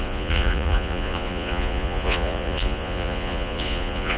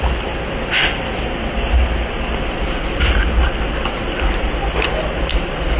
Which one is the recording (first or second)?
second